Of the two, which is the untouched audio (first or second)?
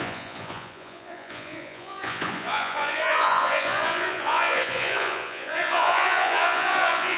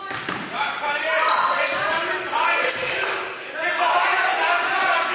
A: second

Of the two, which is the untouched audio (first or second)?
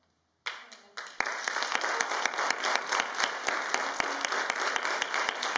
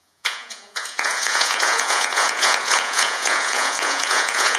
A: first